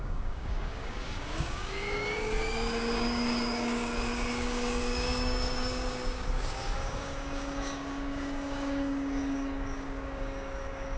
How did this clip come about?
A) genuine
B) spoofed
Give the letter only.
B